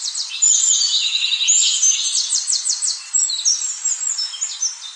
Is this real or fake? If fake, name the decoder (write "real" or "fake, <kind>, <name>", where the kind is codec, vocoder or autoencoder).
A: real